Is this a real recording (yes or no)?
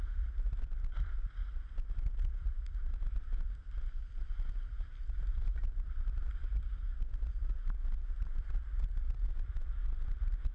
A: no